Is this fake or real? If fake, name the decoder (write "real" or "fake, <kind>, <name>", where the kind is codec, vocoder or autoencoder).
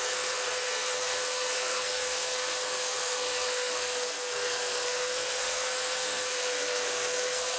fake, codec, SNAC